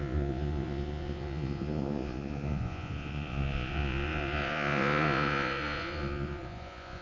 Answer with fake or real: fake